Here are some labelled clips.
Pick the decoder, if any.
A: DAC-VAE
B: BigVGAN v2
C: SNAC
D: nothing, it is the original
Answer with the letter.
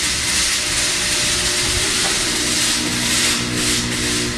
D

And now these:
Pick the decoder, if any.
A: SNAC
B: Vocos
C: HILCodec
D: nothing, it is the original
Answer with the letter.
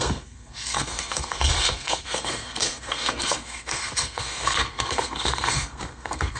A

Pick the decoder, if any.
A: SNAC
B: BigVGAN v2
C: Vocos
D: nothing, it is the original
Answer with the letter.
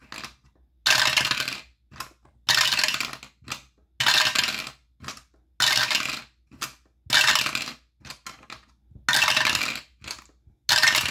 D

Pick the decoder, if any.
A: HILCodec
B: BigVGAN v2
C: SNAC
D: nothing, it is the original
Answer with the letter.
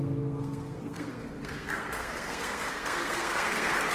C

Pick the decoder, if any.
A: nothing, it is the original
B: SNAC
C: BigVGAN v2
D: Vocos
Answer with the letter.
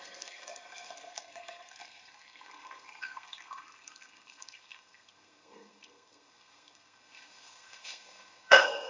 B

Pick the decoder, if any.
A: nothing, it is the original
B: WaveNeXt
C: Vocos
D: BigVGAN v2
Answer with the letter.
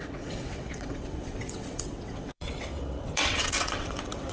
B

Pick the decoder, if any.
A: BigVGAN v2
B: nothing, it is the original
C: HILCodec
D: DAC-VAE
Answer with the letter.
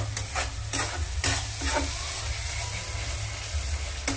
B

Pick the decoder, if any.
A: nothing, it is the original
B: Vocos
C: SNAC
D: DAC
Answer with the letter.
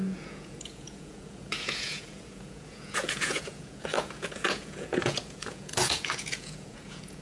B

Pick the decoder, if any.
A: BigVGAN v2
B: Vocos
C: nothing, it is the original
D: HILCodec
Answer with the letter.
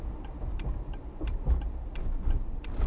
A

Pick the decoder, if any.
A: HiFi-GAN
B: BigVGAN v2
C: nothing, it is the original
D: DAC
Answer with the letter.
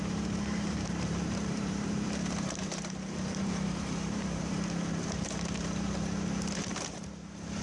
B